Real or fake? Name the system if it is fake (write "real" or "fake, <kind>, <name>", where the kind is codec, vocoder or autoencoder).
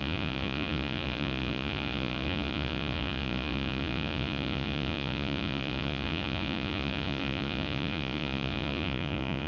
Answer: fake, vocoder, Vocos